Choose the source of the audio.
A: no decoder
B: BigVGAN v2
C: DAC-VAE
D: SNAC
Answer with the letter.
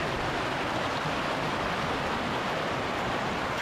A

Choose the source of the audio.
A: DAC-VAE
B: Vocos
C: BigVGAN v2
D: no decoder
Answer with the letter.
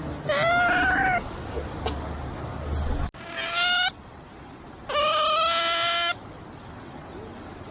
D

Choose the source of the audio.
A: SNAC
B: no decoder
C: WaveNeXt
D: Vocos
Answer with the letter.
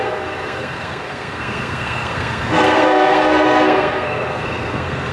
A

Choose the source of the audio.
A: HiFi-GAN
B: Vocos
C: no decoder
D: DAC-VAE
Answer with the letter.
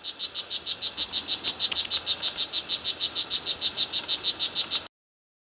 C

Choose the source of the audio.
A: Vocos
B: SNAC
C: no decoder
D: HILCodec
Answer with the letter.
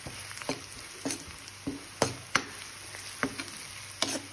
C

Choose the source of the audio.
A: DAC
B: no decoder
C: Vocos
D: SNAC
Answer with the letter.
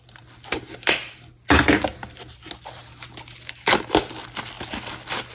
B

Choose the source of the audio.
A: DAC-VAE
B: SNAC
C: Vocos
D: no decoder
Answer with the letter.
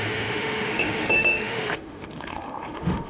A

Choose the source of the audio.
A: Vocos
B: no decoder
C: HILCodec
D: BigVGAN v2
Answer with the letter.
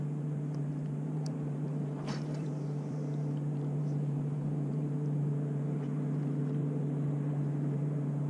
D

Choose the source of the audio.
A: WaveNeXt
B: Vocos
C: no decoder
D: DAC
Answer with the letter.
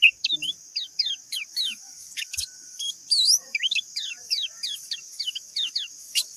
D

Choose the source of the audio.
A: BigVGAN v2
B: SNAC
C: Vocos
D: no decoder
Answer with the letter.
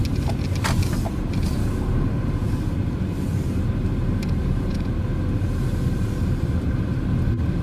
D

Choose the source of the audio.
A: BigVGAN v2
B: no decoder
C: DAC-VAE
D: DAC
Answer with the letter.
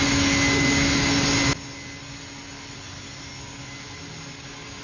B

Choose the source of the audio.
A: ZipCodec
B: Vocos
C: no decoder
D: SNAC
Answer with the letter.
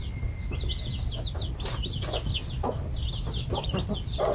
C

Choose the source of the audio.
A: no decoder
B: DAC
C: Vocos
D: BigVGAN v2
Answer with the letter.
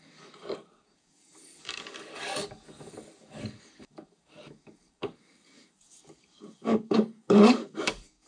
B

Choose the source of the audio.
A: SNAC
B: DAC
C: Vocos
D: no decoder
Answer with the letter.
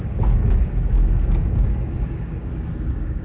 B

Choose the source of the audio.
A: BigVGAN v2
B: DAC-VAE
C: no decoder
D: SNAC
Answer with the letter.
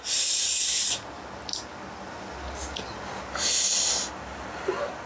C